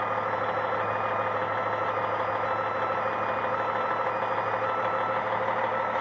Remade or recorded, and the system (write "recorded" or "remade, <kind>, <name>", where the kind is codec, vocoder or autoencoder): recorded